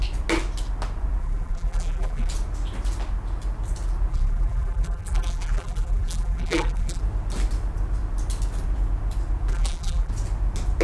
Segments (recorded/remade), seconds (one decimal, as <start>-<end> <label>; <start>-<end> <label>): 0.0-1.2 recorded; 1.2-2.3 remade; 2.3-4.1 recorded; 4.1-7.0 remade; 7.0-9.5 recorded; 9.5-10.1 remade; 10.1-10.8 recorded